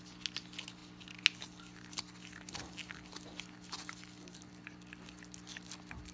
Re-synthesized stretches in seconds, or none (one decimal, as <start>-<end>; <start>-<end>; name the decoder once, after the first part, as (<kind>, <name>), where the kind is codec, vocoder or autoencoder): none

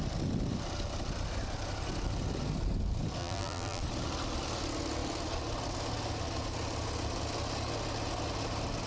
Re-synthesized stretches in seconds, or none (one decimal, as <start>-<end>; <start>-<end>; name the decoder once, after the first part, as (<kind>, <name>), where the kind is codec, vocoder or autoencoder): 3.2-3.8 (vocoder, BigVGAN v2)

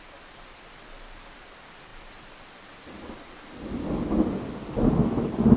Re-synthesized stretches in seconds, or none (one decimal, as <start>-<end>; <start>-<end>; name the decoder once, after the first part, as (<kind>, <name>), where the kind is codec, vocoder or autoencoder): none

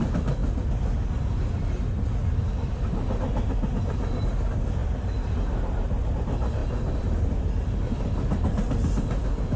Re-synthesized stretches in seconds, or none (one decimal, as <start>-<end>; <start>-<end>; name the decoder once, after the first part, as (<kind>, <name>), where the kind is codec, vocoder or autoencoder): 4.8-6.1 (vocoder, BigVGAN v2)

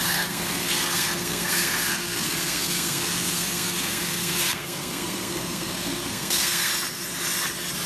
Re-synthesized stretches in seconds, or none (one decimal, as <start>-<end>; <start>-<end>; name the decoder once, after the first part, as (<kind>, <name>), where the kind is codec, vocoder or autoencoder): 0.0-6.7 (codec, SNAC)

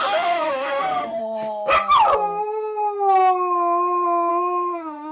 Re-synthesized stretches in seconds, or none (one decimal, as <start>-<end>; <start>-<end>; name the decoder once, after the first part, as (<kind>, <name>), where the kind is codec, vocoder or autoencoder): 0.0-1.2 (autoencoder, DAC-VAE); 4.3-5.1

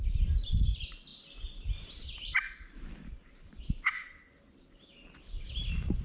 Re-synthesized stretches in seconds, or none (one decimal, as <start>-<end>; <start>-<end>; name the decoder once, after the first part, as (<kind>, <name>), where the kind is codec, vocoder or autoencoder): none